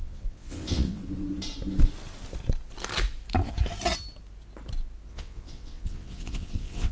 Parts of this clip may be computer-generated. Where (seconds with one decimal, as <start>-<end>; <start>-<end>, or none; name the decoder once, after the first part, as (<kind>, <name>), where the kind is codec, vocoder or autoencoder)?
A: 0.0-1.0 (vocoder, WaveNeXt); 5.1-6.9